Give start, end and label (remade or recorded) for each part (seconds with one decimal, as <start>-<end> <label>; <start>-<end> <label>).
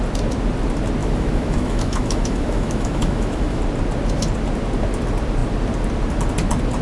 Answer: 0.0-1.0 recorded; 1.0-3.6 remade; 3.6-6.8 recorded